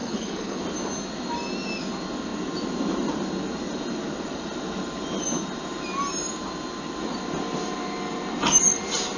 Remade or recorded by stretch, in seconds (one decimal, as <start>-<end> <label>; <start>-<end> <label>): 0.0-0.6 remade; 0.6-9.2 recorded